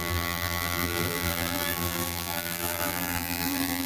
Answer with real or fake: fake